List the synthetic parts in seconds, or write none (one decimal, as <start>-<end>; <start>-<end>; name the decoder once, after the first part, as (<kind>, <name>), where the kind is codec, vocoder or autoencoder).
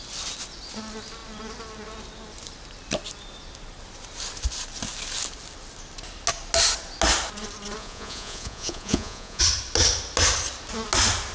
7.8-9.4 (vocoder, Vocos)